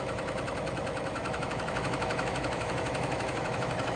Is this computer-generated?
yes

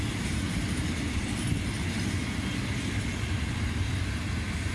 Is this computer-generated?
no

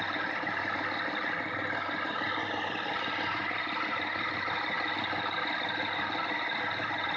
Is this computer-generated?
yes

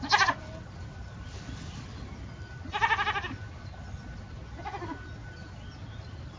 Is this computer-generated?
no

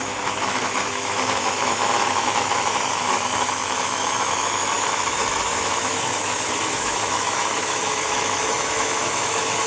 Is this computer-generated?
yes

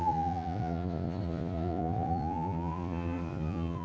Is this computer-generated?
yes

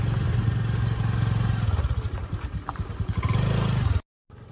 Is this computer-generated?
no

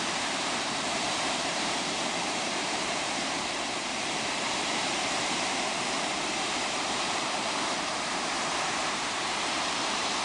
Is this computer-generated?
yes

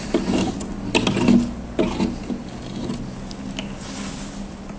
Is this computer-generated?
no